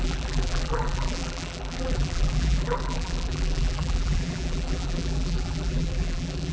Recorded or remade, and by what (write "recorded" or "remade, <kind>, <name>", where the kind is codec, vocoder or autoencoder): remade, vocoder, BigVGAN v2